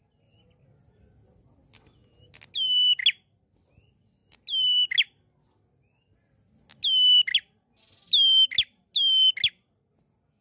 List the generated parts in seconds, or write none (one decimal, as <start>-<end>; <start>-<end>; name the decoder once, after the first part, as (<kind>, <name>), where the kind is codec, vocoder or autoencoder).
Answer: none